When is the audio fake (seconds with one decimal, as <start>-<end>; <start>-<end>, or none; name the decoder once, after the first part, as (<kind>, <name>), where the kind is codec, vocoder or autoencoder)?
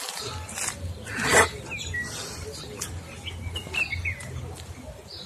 none